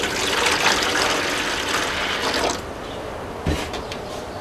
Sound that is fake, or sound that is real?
real